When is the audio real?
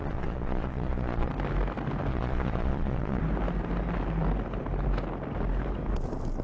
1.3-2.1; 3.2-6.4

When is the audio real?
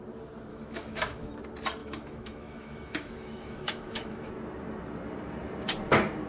0.0-0.5; 1.3-1.8; 4.3-6.3